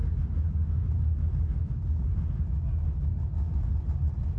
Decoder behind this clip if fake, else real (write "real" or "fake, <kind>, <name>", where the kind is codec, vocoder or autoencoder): real